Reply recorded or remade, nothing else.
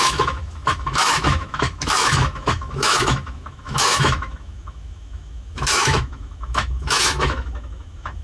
remade